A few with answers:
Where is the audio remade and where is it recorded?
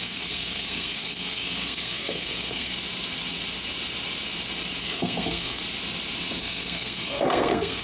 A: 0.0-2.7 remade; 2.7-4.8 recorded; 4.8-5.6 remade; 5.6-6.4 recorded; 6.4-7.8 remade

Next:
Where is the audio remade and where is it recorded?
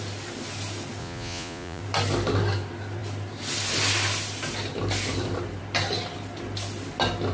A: 0.0-1.0 recorded; 1.0-1.8 remade; 1.8-7.3 recorded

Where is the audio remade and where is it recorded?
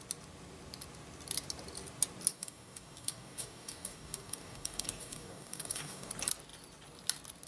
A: 0.0-2.3 recorded; 2.3-6.1 remade; 6.1-7.5 recorded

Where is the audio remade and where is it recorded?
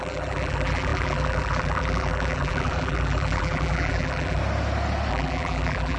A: 0.0-4.4 remade; 4.4-5.1 recorded; 5.1-6.0 remade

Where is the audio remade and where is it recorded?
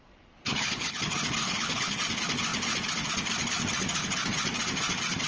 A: 0.0-0.5 recorded; 0.5-1.0 remade; 1.0-1.4 recorded; 1.4-2.0 remade; 2.0-5.3 recorded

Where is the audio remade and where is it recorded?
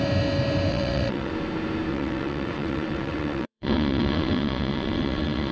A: 0.0-0.7 recorded; 0.7-1.3 remade; 1.3-1.9 recorded; 1.9-5.5 remade